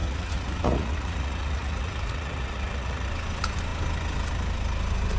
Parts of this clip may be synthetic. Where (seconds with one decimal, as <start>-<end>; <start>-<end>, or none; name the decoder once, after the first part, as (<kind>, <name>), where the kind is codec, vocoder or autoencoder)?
0.0-3.1 (vocoder, Vocos)